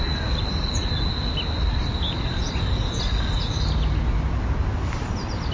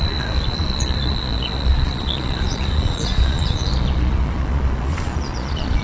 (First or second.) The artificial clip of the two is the second